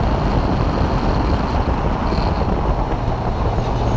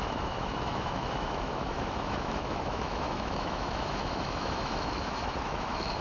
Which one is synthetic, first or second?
second